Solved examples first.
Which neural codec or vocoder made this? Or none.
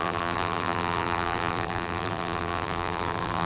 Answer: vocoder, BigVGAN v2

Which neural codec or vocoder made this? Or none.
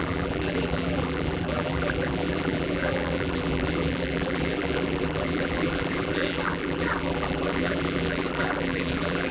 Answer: vocoder, BigVGAN v2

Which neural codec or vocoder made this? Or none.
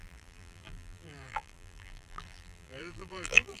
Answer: vocoder, BigVGAN v2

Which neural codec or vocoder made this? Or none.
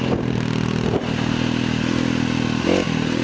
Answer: none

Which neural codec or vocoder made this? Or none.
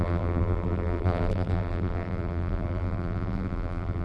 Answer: vocoder, BigVGAN v2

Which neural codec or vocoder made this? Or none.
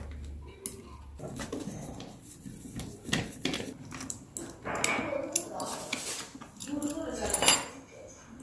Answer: none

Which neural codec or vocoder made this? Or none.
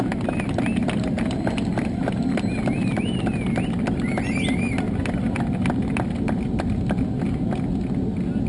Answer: none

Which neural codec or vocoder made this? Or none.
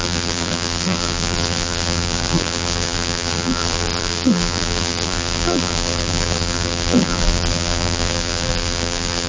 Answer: vocoder, BigVGAN v2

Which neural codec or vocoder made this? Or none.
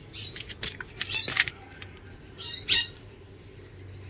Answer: vocoder, BigVGAN v2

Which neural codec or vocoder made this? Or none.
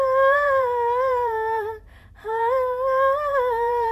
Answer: vocoder, BigVGAN v2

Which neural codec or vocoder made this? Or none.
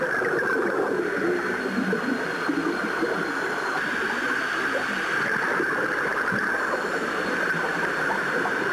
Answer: none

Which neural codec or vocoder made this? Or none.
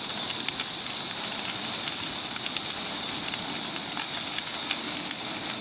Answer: none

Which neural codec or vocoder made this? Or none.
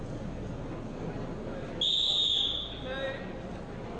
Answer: none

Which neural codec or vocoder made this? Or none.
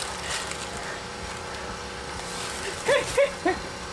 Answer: none